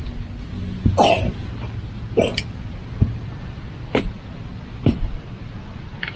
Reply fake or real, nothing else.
real